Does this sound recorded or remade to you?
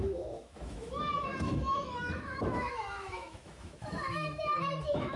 remade